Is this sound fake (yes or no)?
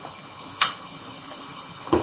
yes